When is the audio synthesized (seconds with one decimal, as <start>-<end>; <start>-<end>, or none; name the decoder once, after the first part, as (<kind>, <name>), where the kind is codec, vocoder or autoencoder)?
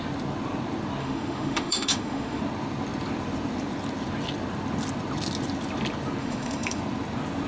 1.0-2.4 (autoencoder, DAC-VAE); 6.2-6.8